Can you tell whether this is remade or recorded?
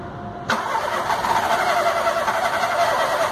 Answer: recorded